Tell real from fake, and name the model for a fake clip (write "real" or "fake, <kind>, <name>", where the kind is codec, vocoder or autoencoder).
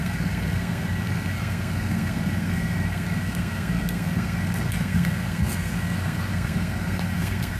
fake, codec, SNAC